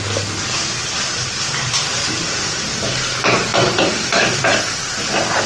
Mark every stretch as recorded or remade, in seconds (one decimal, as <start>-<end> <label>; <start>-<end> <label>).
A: 0.0-0.8 recorded; 0.8-3.0 remade; 3.0-3.5 recorded; 3.5-4.4 remade; 4.4-5.5 recorded